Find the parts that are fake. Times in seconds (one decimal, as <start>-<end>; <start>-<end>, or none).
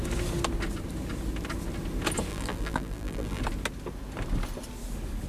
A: 2.3-3.4